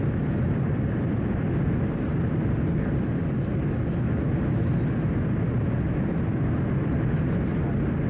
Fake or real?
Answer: real